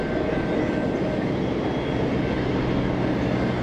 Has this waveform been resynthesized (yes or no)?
no